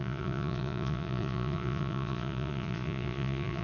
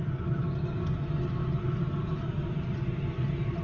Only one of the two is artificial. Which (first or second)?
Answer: first